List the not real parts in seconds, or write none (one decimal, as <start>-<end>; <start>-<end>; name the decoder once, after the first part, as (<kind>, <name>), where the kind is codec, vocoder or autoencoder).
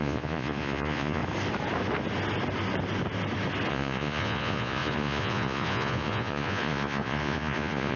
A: 0.0-1.2 (vocoder, Vocos); 3.7-8.0